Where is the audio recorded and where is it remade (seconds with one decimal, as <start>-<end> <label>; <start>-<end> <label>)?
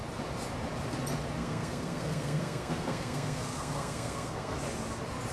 0.0-1.4 recorded; 1.4-4.6 remade; 4.6-5.3 recorded